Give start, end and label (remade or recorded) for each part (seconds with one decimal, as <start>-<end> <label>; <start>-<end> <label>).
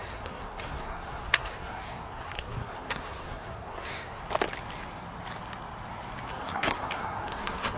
0.0-4.2 remade; 4.2-6.3 recorded; 6.3-7.8 remade